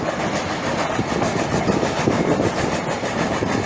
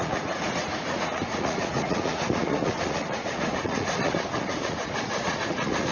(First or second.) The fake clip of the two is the second